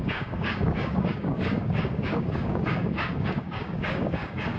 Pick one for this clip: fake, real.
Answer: fake